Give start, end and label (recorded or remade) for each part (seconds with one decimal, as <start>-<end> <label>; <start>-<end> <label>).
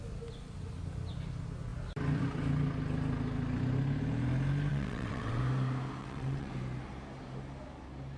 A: 0.0-4.7 recorded; 4.7-5.4 remade; 5.4-6.0 recorded; 6.0-6.5 remade; 6.5-8.2 recorded